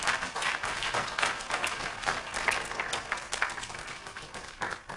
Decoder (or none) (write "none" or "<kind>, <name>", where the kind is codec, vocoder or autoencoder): codec, SNAC